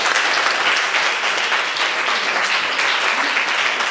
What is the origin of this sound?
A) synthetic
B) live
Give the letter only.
B